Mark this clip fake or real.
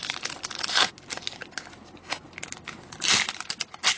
real